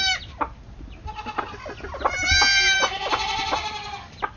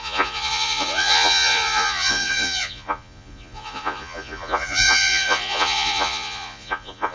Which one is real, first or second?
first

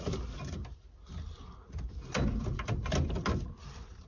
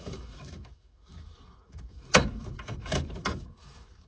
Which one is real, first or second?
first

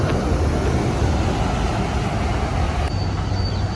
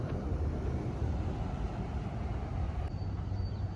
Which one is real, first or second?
first